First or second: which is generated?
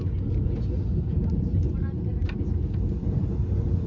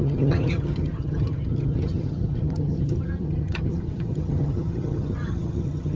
second